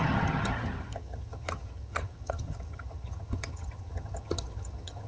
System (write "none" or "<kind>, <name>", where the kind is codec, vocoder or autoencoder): vocoder, HiFi-GAN